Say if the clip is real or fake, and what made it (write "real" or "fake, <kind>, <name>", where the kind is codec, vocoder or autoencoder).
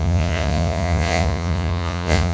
fake, vocoder, Vocos